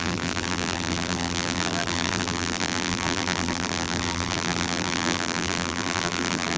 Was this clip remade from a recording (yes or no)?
yes